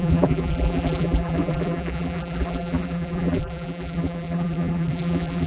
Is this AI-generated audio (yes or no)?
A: yes